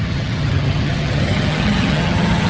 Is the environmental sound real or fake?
fake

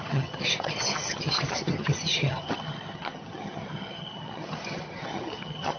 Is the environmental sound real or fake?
fake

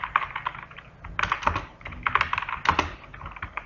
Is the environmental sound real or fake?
real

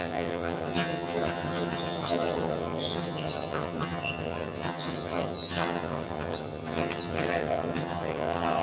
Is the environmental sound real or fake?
fake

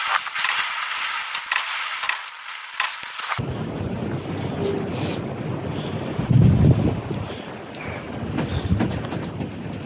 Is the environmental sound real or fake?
real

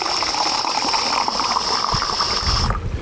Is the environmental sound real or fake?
real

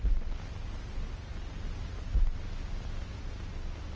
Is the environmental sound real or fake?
real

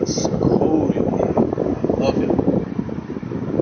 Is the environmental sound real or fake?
real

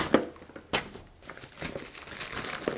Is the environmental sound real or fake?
real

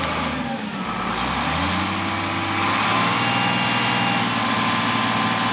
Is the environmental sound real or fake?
real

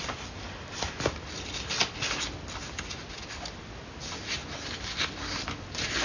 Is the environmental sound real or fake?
real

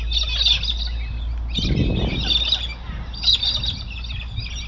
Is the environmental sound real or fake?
real